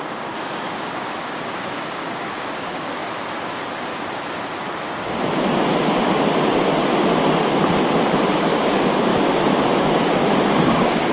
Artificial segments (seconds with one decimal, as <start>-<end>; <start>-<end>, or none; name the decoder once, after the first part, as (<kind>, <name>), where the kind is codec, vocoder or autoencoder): 0.0-3.0 (codec, DAC); 8.3-9.1; 10.5-11.1